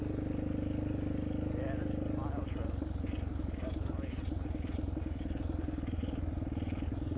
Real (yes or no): yes